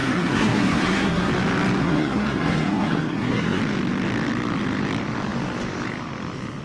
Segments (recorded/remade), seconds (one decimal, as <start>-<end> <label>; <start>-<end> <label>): 0.0-1.3 remade; 1.3-1.8 recorded; 1.8-3.6 remade; 3.6-6.6 recorded